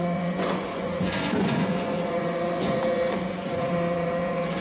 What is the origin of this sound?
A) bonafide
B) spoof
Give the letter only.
B